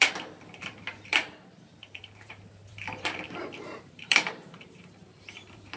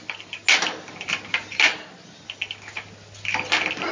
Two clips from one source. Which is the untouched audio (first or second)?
second